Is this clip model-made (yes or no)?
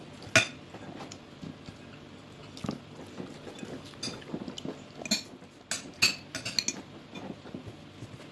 no